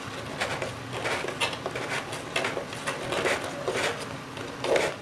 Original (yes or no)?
yes